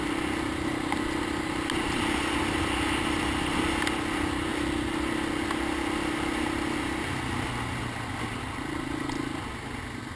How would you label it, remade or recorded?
recorded